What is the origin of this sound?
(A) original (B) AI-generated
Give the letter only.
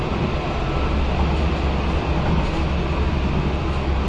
A